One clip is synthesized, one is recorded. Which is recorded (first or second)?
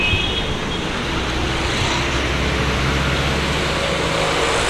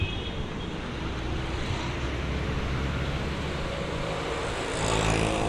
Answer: first